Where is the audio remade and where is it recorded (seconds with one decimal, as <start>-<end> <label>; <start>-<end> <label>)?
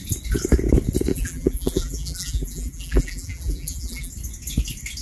0.0-1.1 recorded; 1.1-4.1 remade; 4.1-5.0 recorded